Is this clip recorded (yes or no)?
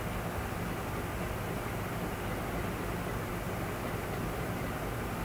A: yes